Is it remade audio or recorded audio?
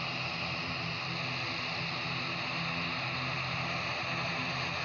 recorded